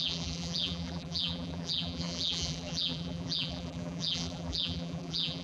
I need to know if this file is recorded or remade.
remade